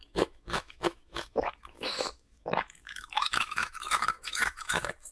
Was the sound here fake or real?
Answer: fake